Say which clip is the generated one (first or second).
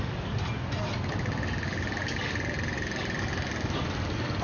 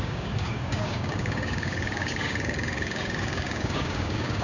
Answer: second